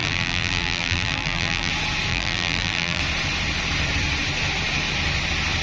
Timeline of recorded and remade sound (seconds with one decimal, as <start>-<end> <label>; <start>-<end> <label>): 0.0-1.7 remade; 1.7-2.1 recorded; 2.1-3.0 remade; 3.0-5.6 recorded